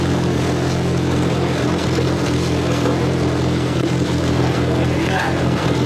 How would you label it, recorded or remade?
remade